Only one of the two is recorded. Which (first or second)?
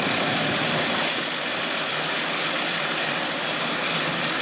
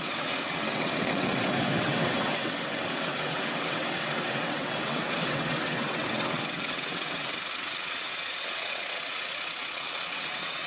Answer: first